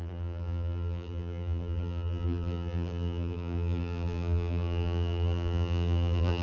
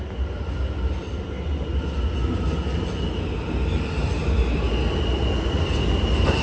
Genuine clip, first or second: second